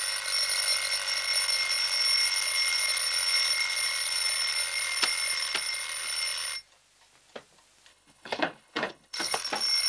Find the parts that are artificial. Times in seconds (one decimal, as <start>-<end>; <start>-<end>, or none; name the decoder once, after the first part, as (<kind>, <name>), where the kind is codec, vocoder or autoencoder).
7.9-9.4 (codec, HILCodec)